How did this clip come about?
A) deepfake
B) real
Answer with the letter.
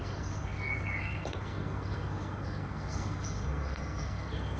A